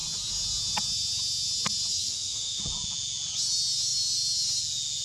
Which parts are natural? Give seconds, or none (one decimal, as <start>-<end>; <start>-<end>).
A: 0.0-1.9; 2.6-5.0